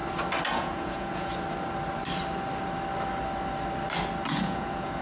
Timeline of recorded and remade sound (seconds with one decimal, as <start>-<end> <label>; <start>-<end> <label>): 0.0-0.5 recorded; 0.5-1.3 remade; 1.3-4.3 recorded; 4.3-5.0 remade